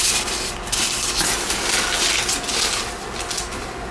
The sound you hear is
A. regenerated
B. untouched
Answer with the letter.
B